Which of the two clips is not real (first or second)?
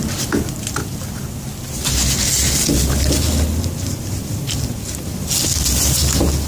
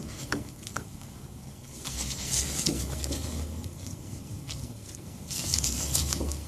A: second